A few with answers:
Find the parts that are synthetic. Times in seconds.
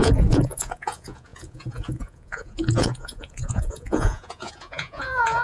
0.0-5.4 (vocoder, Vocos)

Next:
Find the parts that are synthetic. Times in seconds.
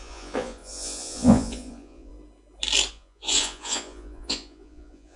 0.0-2.1 (vocoder, Vocos); 2.9-5.2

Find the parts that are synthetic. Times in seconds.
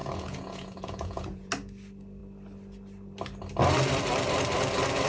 0.0-1.5 (vocoder, Vocos)